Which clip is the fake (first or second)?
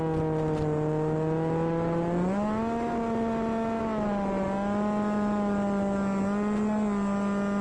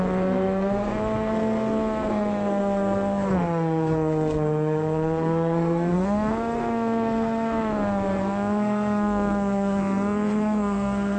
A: second